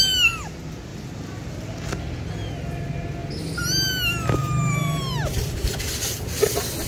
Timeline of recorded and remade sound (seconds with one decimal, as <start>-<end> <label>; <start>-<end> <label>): 0.0-0.9 recorded; 0.9-1.5 remade; 1.5-4.4 recorded; 4.4-5.7 remade; 5.7-6.9 recorded